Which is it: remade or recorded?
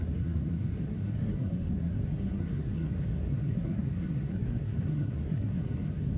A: remade